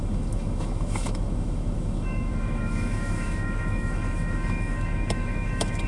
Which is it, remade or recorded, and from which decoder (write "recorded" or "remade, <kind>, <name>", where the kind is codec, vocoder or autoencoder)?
remade, autoencoder, DAC-VAE